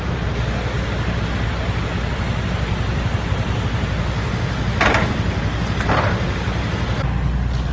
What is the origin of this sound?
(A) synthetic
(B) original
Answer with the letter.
B